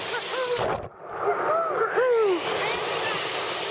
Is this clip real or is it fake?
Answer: real